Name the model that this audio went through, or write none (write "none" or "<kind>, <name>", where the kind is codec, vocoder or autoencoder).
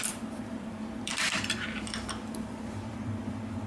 vocoder, BigVGAN v2